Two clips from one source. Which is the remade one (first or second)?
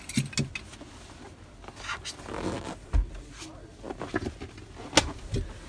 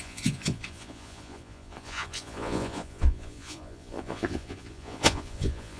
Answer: second